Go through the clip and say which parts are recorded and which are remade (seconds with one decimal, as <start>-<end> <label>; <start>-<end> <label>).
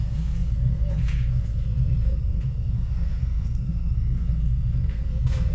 0.0-5.5 remade